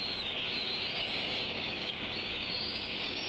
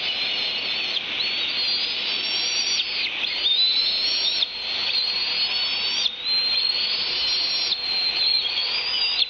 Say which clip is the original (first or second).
second